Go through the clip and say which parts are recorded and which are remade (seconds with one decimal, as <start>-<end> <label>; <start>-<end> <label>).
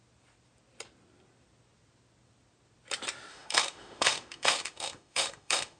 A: 0.0-3.3 recorded; 3.3-5.8 remade